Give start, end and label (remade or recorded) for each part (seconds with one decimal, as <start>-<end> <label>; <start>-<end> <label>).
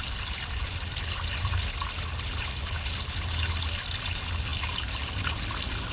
0.0-5.9 recorded